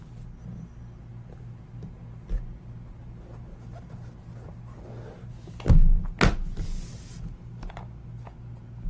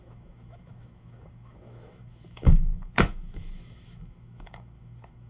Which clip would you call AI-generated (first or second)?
second